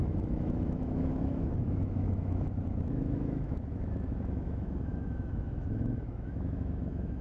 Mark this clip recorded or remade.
remade